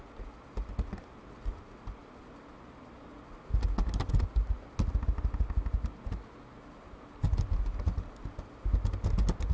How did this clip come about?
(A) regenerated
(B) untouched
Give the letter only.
B